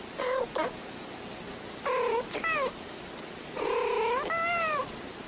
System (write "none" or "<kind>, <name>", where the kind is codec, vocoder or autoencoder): none